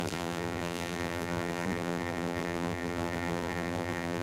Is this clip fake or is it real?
fake